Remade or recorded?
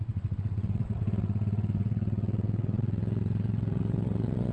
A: remade